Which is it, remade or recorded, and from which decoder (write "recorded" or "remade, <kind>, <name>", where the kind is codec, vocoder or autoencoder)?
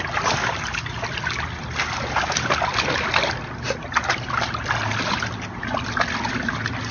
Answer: recorded